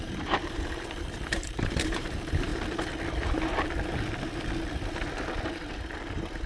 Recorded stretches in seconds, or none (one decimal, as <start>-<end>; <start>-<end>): 2.5-6.5